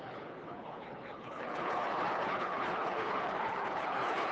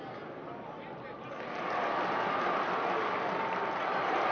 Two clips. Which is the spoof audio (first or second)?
first